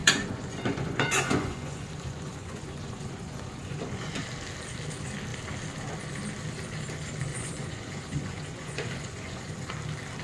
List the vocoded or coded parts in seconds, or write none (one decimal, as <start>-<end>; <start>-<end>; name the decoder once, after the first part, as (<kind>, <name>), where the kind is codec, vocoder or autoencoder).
0.0-4.2 (vocoder, Vocos); 7.3-9.7